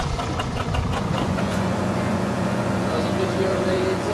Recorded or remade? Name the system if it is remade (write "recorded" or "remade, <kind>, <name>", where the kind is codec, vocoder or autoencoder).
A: remade, vocoder, Vocos